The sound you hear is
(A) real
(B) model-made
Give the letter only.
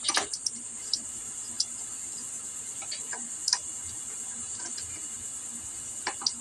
A